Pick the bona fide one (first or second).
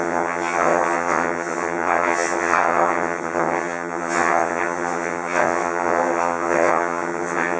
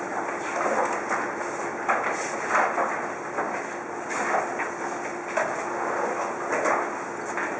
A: second